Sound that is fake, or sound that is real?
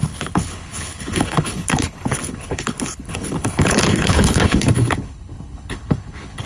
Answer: fake